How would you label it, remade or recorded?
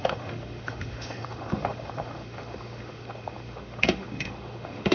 remade